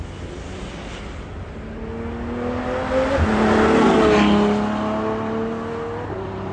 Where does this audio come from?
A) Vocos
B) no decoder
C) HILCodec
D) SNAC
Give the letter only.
B